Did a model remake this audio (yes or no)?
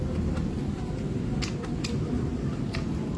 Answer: no